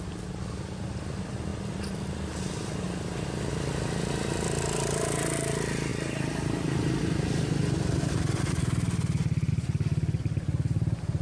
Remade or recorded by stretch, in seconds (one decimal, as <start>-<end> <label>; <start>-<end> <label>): 0.0-11.2 recorded